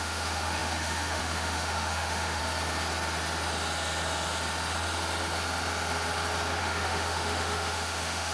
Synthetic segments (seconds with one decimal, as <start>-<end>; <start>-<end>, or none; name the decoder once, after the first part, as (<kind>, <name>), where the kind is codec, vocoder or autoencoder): 0.0-2.4 (autoencoder, DAC-VAE); 6.6-8.3